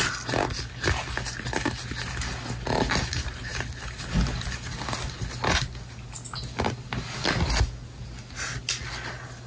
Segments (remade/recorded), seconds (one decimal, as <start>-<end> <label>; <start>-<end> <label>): 0.0-9.5 recorded